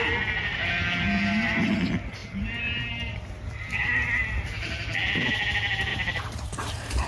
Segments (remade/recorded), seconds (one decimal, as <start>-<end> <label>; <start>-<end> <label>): 0.0-2.2 recorded; 2.2-3.3 remade; 3.3-5.9 recorded; 5.9-7.1 remade